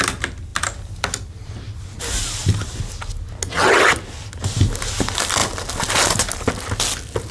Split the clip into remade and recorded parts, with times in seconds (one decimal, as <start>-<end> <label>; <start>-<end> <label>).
0.0-7.3 recorded